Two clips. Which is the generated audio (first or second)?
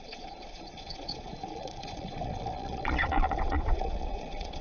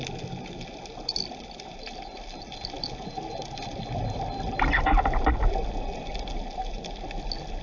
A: first